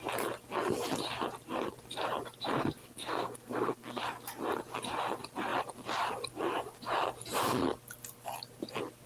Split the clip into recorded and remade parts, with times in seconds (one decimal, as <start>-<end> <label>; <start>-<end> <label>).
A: 0.0-2.8 recorded; 2.8-4.0 remade; 4.0-9.1 recorded